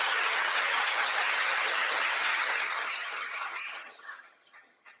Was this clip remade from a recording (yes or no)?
yes